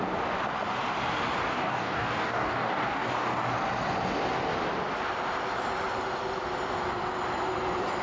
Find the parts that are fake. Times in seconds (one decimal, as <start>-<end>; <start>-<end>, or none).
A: 1.5-3.5